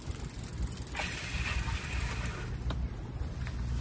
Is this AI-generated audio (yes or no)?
no